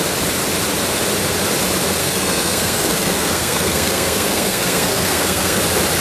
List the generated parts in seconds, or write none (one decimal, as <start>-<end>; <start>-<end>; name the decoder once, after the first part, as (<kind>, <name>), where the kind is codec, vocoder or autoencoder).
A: 2.0-5.6 (codec, SNAC)